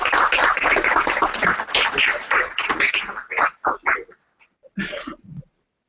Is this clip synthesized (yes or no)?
no